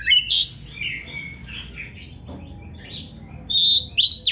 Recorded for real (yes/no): yes